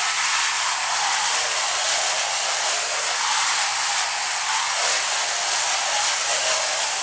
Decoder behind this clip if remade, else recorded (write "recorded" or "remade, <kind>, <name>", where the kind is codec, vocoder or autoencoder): recorded